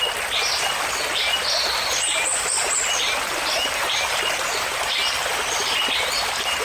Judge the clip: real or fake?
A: real